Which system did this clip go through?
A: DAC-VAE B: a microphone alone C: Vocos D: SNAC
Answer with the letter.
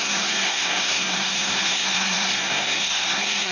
D